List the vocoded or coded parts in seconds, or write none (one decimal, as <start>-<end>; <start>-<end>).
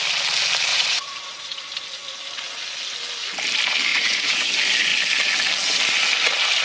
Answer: 0.7-1.6; 3.9-4.5